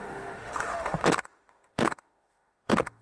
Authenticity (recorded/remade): remade